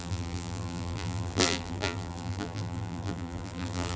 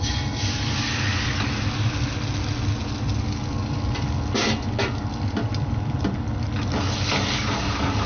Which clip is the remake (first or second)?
first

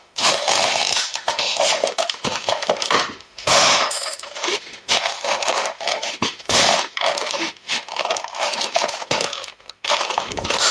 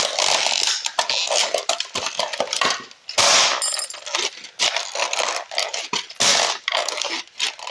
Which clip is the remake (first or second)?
first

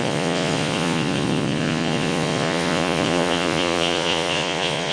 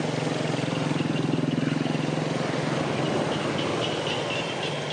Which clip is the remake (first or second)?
first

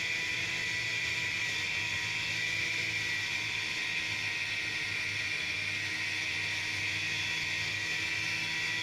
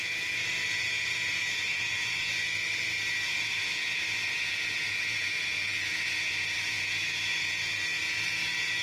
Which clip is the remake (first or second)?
second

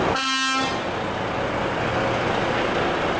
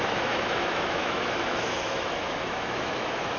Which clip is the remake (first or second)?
second